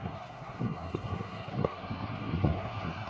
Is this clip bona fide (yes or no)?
no